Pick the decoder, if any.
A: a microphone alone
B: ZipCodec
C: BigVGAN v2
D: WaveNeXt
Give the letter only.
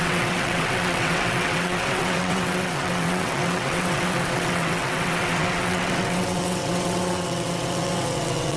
D